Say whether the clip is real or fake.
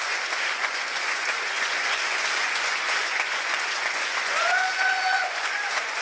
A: fake